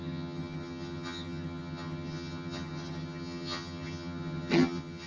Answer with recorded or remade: remade